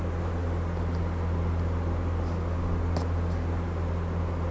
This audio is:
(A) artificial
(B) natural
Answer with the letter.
B